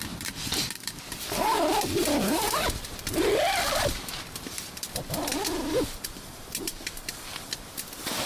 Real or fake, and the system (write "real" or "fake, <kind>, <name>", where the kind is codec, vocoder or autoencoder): fake, vocoder, BigVGAN v2